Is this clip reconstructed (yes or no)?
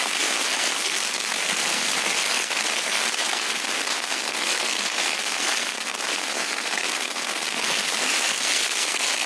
yes